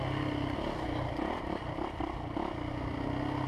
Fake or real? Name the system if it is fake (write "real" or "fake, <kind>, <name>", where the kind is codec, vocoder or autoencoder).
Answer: real